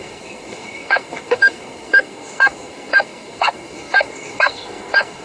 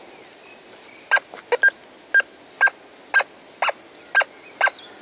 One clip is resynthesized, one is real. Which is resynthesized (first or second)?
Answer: first